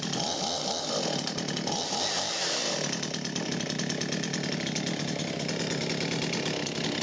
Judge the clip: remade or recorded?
recorded